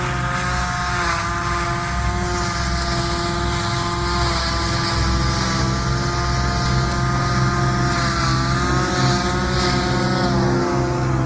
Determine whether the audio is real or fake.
real